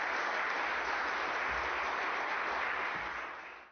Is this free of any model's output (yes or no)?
yes